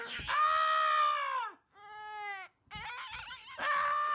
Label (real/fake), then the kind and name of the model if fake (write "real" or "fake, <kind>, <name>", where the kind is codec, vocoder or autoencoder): real